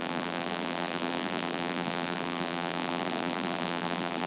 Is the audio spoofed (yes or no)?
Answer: yes